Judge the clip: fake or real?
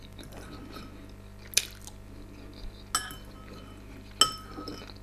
real